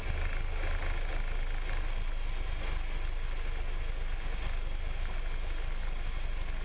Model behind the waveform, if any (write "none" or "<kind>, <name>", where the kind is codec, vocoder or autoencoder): none